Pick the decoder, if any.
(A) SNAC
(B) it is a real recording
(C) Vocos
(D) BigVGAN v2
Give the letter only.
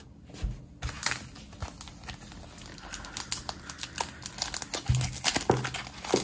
B